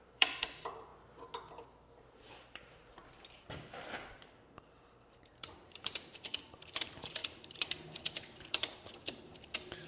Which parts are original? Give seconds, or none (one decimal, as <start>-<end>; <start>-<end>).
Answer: 0.9-2.1; 3.0-4.1